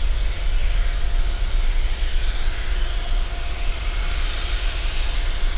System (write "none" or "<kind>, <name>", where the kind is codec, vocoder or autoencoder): none